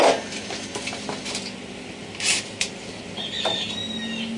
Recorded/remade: recorded